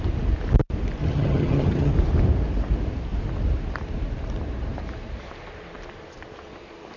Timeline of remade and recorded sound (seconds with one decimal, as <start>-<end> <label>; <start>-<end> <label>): 0.0-1.0 recorded; 1.0-1.9 remade; 1.9-7.0 recorded